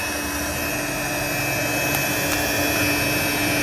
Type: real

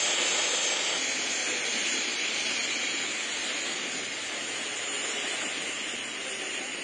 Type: real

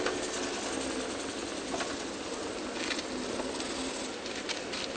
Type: real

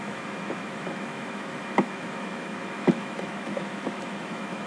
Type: fake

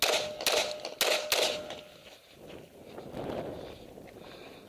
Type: real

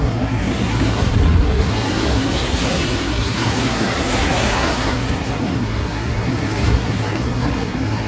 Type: fake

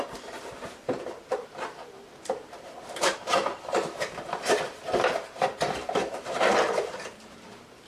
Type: fake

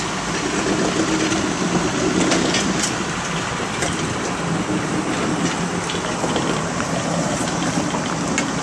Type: real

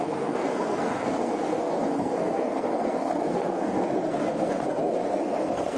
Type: fake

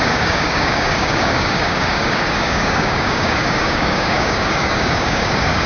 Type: fake